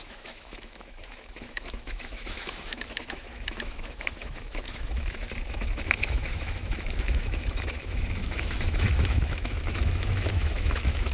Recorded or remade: remade